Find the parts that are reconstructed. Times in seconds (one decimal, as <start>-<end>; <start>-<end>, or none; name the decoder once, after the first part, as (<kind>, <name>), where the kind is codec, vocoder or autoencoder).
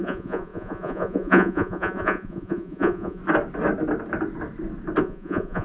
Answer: 0.0-3.2 (vocoder, Vocos); 5.0-5.6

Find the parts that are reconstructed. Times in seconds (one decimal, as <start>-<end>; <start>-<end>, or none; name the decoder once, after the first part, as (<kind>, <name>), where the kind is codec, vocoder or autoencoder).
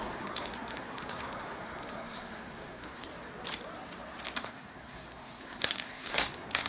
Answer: 0.0-3.1 (codec, SNAC); 4.4-6.7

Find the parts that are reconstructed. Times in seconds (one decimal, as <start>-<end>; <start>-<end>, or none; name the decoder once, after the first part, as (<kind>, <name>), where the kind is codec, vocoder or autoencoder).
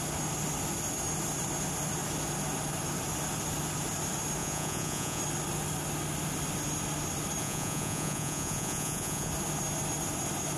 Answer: 4.4-5.2 (vocoder, Vocos); 7.4-9.3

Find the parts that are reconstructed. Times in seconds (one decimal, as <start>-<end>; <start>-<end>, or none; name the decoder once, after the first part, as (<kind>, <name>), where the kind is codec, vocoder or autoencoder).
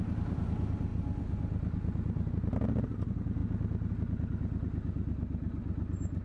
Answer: none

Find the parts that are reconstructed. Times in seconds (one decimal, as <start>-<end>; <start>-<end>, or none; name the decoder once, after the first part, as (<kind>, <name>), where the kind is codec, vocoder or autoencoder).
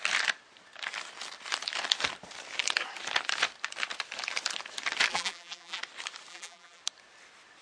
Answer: 5.1-5.8 (vocoder, BigVGAN v2); 6.3-6.8